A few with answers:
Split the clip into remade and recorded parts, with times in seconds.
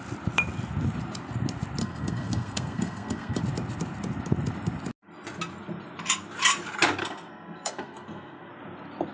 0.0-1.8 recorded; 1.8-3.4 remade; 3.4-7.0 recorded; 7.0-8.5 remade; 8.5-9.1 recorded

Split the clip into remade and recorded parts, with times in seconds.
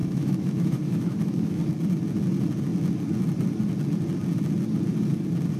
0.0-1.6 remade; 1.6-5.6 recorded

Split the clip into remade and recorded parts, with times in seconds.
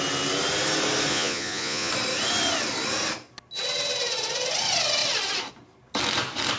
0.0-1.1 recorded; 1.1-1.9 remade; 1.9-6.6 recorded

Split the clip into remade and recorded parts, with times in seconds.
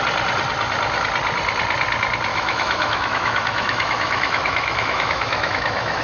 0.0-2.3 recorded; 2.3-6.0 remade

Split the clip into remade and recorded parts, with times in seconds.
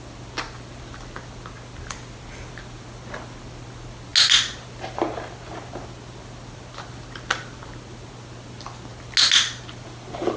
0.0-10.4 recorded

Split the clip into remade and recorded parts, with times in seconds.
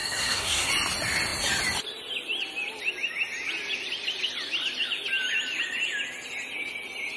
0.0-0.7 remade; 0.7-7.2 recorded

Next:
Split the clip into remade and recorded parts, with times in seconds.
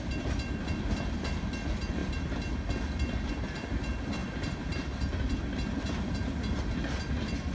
0.0-7.5 recorded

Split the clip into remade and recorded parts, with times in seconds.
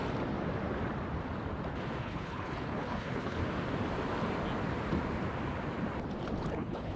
0.0-2.0 recorded; 2.0-3.4 remade; 3.4-6.5 recorded; 6.5-7.0 remade